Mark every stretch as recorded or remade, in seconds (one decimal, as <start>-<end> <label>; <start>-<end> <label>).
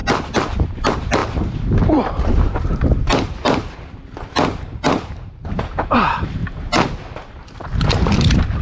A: 0.0-0.6 recorded; 0.6-6.4 remade; 6.4-8.2 recorded; 8.2-8.6 remade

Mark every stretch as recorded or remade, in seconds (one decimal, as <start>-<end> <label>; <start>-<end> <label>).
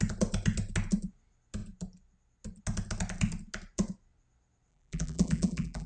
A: 0.0-4.7 recorded; 4.7-5.9 remade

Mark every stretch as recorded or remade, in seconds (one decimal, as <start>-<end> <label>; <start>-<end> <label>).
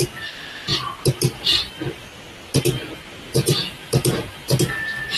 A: 0.0-3.1 recorded; 3.1-4.6 remade; 4.6-5.2 recorded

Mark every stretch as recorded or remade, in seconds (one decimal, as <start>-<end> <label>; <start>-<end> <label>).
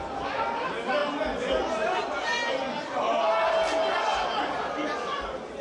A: 0.0-4.1 recorded; 4.1-4.8 remade; 4.8-5.6 recorded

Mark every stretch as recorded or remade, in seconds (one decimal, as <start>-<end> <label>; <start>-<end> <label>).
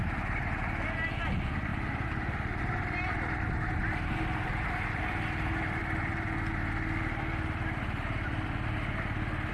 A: 0.0-9.5 recorded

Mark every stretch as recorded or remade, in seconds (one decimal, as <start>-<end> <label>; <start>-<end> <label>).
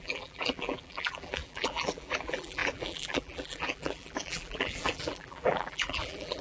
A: 0.0-6.4 remade